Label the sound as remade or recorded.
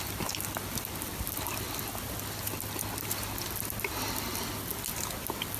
recorded